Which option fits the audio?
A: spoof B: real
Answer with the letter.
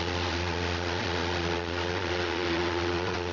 A